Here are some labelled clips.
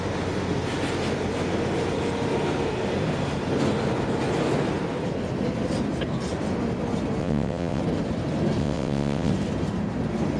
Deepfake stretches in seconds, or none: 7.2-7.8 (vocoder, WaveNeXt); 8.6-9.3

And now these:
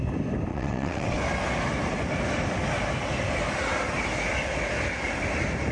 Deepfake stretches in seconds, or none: 0.5-1.2 (vocoder, WaveNeXt)

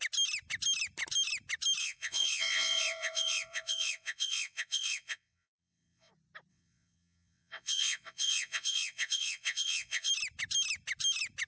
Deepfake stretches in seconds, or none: 1.8-6.1 (vocoder, WaveNeXt); 6.5-10.1

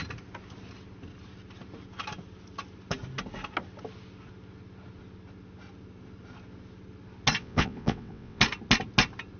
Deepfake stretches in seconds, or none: 7.4-8.4 (vocoder, WaveNeXt)

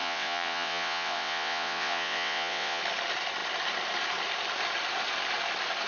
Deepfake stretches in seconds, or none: 0.0-2.8 (vocoder, WaveNeXt)

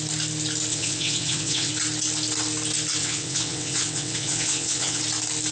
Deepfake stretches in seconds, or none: 0.7-1.7 (vocoder, WaveNeXt); 3.0-5.0